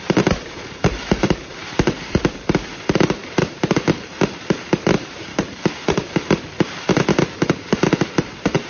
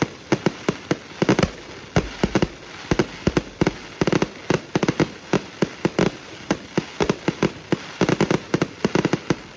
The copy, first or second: first